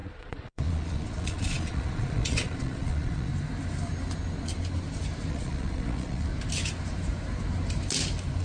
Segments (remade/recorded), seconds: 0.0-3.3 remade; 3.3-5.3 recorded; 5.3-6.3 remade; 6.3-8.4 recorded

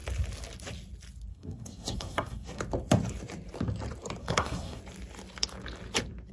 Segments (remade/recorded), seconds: 0.0-1.3 recorded; 1.3-2.6 remade; 2.6-4.2 recorded; 4.2-4.8 remade; 4.8-6.3 recorded

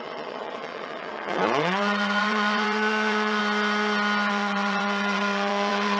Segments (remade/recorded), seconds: 0.0-3.4 remade; 3.4-4.3 recorded; 4.3-6.0 remade

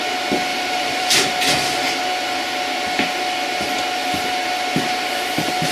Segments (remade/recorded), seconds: 0.0-0.5 recorded; 0.5-1.4 remade; 1.4-5.7 recorded

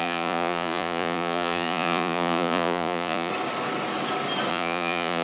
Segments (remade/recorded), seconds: 0.0-3.3 remade; 3.3-4.5 recorded; 4.5-5.2 remade

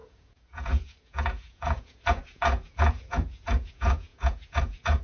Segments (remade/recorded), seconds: 0.0-5.0 remade

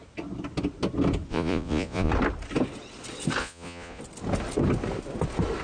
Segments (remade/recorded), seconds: 0.0-1.3 recorded; 1.3-2.1 remade; 2.1-3.4 recorded; 3.4-4.0 remade; 4.0-5.6 recorded